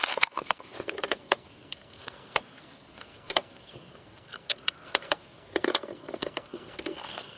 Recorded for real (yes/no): no